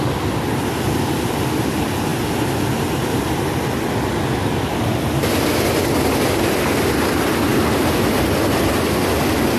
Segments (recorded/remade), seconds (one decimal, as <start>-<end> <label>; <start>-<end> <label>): 0.0-7.5 recorded; 7.5-8.0 remade; 8.0-9.6 recorded